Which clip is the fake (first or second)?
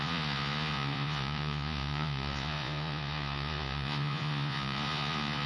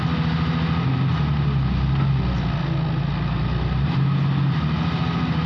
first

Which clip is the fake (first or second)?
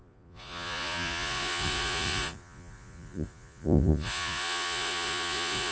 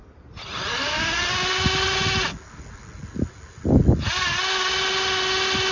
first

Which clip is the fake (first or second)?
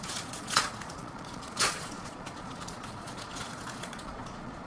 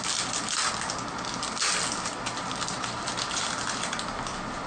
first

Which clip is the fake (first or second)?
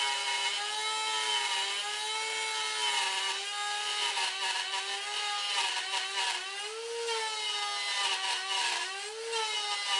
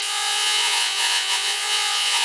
second